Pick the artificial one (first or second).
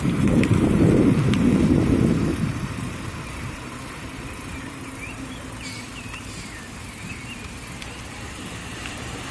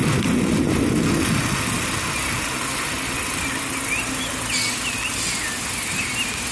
first